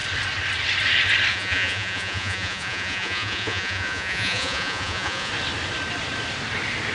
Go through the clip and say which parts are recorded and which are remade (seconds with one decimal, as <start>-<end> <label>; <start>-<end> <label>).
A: 0.0-1.3 recorded; 1.3-5.3 remade; 5.3-6.9 recorded

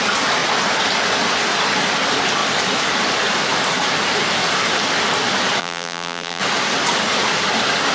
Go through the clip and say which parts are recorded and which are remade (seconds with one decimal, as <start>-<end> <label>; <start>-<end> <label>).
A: 0.0-5.6 recorded; 5.6-6.4 remade; 6.4-7.9 recorded

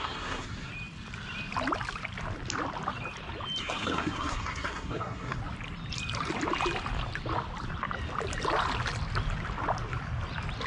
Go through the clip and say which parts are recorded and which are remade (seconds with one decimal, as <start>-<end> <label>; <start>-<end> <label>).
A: 0.0-0.7 remade; 0.7-3.6 recorded; 3.6-5.4 remade; 5.4-10.7 recorded